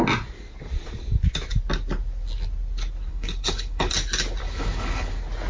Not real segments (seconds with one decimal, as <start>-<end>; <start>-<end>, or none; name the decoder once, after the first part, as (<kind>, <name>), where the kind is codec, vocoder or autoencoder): 3.1-3.9 (codec, HILCodec); 4.4-5.1